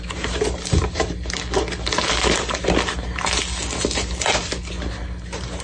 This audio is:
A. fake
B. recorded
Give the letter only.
B